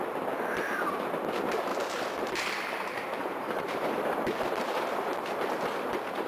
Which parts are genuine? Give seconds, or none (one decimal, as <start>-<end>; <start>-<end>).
0.0-1.7; 5.5-6.3